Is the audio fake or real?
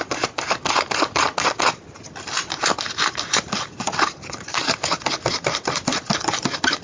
real